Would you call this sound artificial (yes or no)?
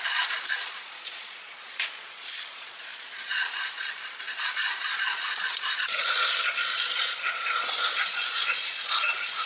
yes